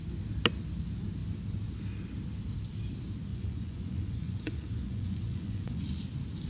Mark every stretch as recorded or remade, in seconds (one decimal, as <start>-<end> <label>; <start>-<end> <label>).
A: 0.0-3.3 recorded; 3.3-5.8 remade; 5.8-6.5 recorded